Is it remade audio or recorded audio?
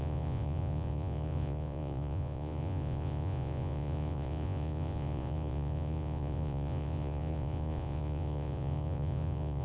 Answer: remade